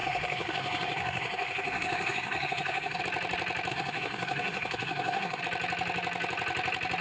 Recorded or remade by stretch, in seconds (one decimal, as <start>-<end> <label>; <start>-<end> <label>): 0.0-3.0 remade; 3.0-3.7 recorded; 3.7-5.4 remade; 5.4-7.0 recorded